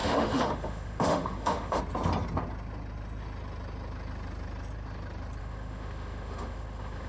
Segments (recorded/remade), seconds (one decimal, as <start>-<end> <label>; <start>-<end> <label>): 0.0-1.8 remade; 1.8-5.4 recorded; 5.4-7.1 remade